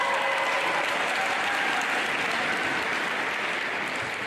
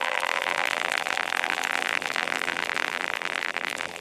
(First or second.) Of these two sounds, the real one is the first